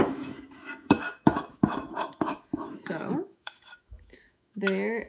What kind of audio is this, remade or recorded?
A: remade